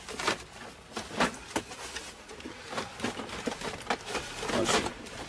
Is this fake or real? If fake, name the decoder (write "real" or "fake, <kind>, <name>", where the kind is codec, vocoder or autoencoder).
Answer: real